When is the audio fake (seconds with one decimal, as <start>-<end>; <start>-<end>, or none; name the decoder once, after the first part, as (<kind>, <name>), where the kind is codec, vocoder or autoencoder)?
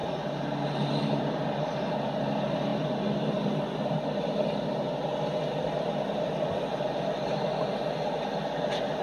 none